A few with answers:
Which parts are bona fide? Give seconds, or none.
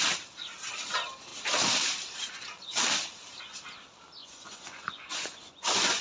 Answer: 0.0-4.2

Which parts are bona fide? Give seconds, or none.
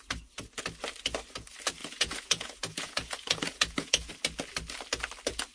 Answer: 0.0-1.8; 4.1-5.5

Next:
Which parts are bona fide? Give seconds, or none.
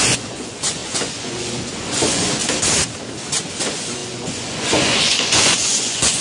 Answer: 2.4-3.6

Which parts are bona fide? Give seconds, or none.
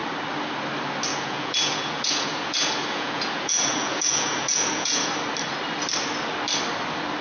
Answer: 0.0-1.1; 5.1-7.2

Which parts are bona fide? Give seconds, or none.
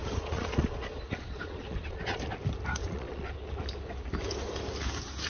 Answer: 2.2-2.8; 3.3-5.3